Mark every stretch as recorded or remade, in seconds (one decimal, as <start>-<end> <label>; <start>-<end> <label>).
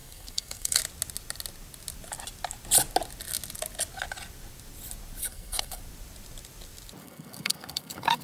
0.0-0.8 remade; 0.8-5.2 recorded; 5.2-5.8 remade; 5.8-7.0 recorded; 7.0-8.2 remade